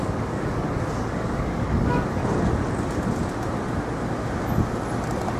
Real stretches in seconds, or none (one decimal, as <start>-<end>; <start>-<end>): 2.2-5.4